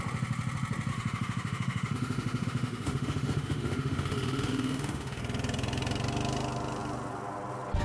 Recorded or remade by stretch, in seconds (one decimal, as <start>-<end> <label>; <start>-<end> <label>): 0.0-0.9 recorded; 0.9-5.2 remade; 5.2-7.8 recorded